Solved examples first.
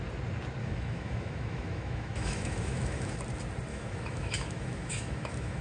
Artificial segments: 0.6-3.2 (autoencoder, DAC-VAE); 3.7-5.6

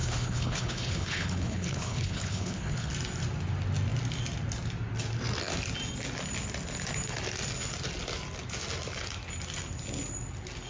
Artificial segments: 0.0-2.9 (codec, HILCodec)

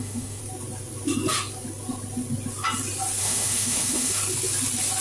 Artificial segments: 0.0-0.4 (autoencoder, DAC-VAE); 3.2-4.2

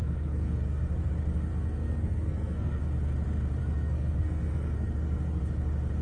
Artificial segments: 0.0-1.1 (codec, SNAC); 1.5-2.8; 3.6-5.4